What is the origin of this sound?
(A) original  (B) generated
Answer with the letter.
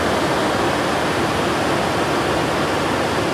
A